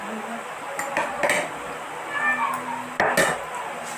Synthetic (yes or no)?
no